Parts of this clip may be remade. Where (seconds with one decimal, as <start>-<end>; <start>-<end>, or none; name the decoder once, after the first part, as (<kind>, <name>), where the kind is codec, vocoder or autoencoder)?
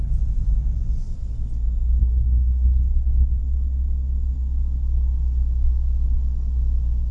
2.0-3.4 (codec, SNAC)